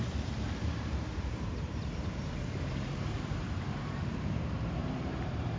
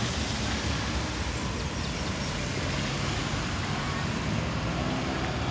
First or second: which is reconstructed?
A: first